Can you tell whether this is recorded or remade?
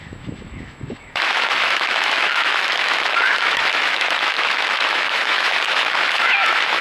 remade